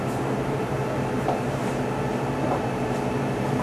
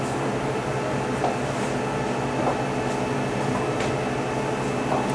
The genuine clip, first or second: second